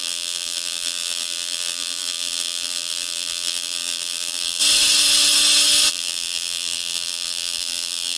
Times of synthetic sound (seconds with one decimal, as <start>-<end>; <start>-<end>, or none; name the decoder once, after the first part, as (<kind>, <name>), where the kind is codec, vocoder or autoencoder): 0.0-4.6 (vocoder, BigVGAN v2); 5.9-8.2

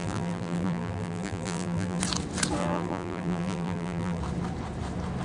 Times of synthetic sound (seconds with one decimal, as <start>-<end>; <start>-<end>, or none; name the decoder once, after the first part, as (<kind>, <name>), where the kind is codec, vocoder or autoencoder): 0.0-2.0 (vocoder, BigVGAN v2); 2.6-4.2

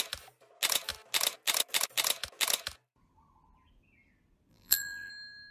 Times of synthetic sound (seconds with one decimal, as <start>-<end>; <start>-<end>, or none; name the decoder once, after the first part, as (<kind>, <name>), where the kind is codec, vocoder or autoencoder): 4.5-5.1 (vocoder, BigVGAN v2)

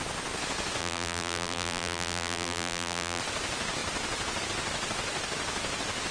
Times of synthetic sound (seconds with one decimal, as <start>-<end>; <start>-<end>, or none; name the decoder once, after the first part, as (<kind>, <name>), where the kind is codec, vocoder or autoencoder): 0.8-3.2 (vocoder, BigVGAN v2)

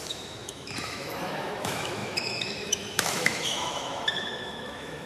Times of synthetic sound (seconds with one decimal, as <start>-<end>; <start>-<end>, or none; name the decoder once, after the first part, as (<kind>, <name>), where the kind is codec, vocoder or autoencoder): 0.0-5.1 (autoencoder, DAC-VAE)

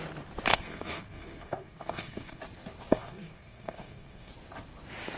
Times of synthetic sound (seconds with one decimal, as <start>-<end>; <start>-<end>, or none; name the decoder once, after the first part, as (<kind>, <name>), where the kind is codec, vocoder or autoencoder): 0.5-2.4 (codec, SNAC); 2.9-4.3